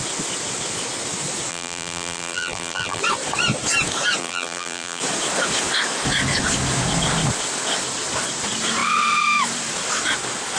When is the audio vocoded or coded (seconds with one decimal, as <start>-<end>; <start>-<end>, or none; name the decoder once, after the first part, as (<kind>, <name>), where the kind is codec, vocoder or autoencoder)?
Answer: 1.5-3.0 (vocoder, BigVGAN v2); 4.2-5.0